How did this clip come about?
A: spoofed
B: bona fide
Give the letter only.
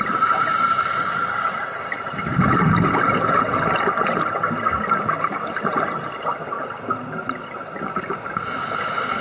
B